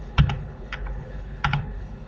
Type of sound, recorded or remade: remade